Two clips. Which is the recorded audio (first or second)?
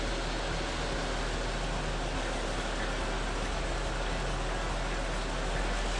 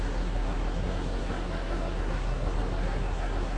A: first